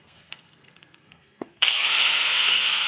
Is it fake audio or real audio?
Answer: fake